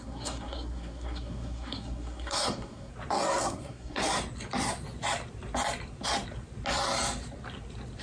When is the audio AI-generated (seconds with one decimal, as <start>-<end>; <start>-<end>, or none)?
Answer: 0.0-2.9; 3.4-4.0